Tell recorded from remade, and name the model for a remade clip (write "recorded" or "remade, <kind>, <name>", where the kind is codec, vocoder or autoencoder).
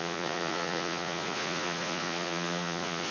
remade, vocoder, Vocos